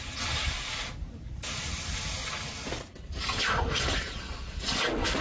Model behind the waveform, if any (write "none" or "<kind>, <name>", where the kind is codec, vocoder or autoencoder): none